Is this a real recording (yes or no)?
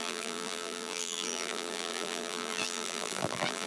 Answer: no